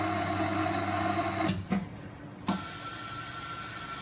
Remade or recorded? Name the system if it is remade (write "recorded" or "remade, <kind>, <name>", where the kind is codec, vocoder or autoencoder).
recorded